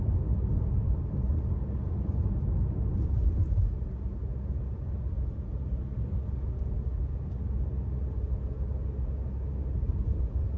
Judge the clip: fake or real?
real